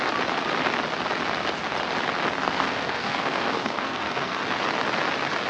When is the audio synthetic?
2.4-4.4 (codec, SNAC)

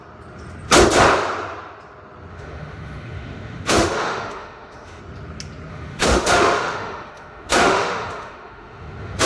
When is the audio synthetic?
2.3-5.0 (autoencoder, DAC-VAE); 5.7-9.3

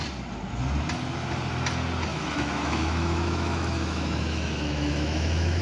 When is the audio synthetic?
2.1-5.6 (autoencoder, DAC-VAE)

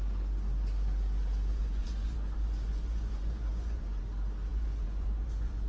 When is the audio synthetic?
1.5-4.0 (vocoder, Vocos); 4.5-5.7

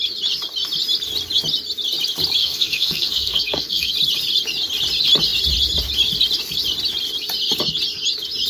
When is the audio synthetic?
2.4-3.9 (codec, SNAC)